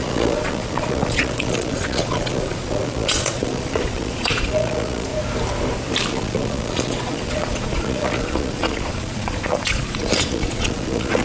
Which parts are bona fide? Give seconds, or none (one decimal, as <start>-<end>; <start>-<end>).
5.1-6.1